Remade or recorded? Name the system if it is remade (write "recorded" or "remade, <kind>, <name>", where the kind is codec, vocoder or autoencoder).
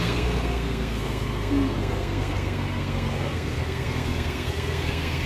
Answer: remade, codec, SNAC